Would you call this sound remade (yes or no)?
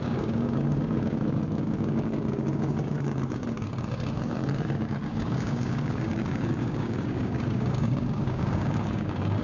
yes